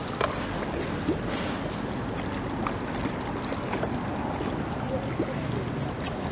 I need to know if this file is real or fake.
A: real